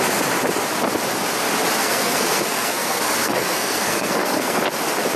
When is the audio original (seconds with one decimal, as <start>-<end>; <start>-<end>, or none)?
0.0-1.8; 4.6-5.2